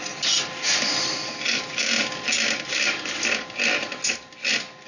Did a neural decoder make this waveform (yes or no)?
no